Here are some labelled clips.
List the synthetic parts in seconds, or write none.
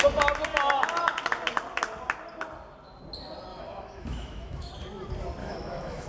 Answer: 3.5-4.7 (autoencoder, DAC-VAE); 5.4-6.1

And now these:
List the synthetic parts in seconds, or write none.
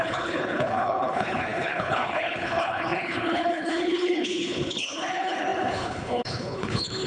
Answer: 0.0-7.1 (codec, HILCodec)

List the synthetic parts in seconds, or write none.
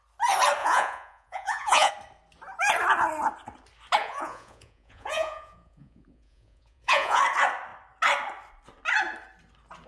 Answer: 0.6-1.9 (vocoder, Vocos); 4.0-7.2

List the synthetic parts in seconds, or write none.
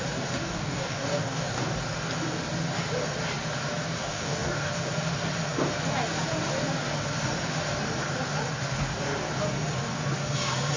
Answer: 0.4-1.7 (codec, DAC); 4.0-4.7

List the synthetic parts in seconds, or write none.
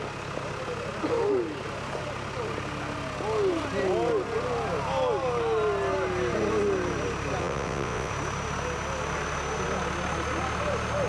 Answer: 7.4-8.1 (vocoder, WaveNeXt)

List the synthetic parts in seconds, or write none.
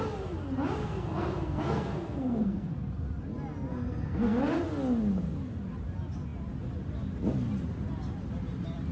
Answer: 0.8-2.7 (codec, SNAC); 3.7-4.4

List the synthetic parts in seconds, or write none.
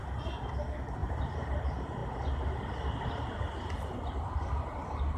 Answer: 1.0-1.6 (vocoder, BigVGAN v2)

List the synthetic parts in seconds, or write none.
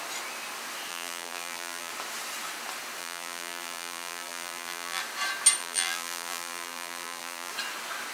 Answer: 0.9-1.9 (vocoder, BigVGAN v2); 3.0-5.0; 5.6-7.5